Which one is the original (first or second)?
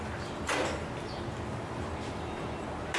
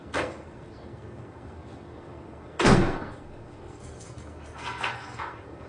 first